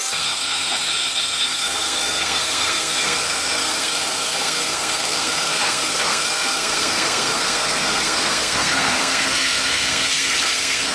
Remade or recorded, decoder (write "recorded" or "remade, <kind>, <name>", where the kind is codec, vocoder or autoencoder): remade, codec, SNAC